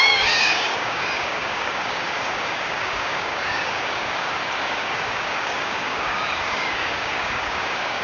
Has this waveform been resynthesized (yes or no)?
yes